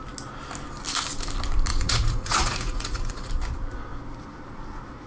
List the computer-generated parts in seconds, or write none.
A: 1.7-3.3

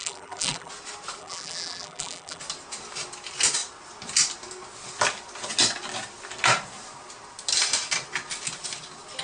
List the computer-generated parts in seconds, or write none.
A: 0.0-0.7; 1.2-2.4

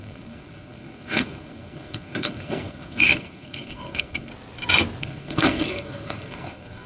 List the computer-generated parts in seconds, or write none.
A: 0.0-4.3; 5.0-6.9

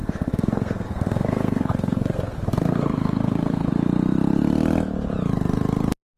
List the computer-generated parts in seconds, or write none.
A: 0.0-3.7

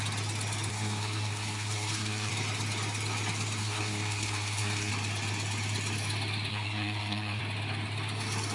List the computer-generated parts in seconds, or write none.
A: 0.7-2.3; 3.6-4.9; 6.5-7.4

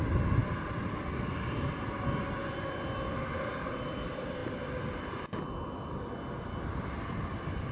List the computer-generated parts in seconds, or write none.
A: none